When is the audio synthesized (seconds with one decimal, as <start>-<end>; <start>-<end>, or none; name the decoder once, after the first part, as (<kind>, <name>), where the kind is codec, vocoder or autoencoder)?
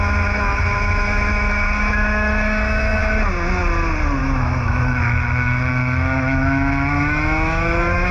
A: 0.0-3.0 (autoencoder, DAC-VAE); 4.2-8.1